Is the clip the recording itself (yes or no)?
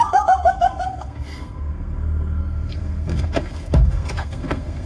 no